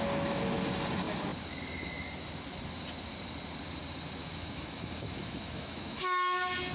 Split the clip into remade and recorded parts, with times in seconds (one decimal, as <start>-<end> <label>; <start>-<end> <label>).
0.0-4.2 recorded; 4.2-6.0 remade; 6.0-6.7 recorded